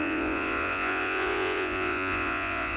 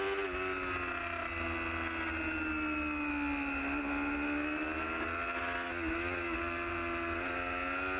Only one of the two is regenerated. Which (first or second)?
first